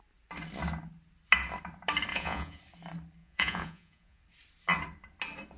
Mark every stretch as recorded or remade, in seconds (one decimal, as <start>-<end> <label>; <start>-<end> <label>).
0.0-2.1 recorded; 2.1-2.6 remade; 2.6-3.2 recorded; 3.2-4.2 remade; 4.2-5.6 recorded